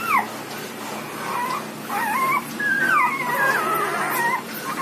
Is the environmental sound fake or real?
real